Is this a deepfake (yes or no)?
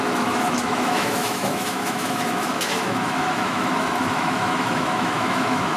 yes